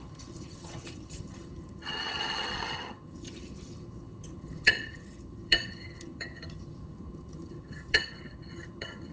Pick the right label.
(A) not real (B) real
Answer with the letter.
A